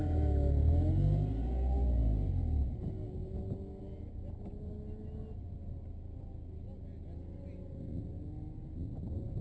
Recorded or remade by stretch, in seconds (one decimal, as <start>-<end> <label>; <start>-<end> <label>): 0.0-9.4 recorded